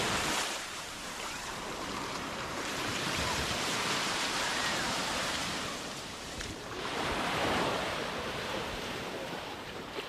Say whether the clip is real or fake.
fake